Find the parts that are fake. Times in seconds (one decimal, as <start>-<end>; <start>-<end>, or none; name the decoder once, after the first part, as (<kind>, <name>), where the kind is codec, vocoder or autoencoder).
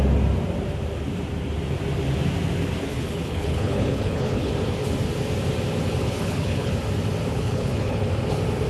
2.9-4.5 (codec, HILCodec); 6.0-6.7; 7.3-8.1